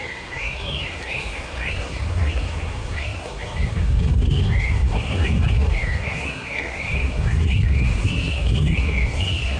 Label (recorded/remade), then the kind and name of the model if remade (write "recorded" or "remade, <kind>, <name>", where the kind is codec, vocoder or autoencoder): remade, codec, SNAC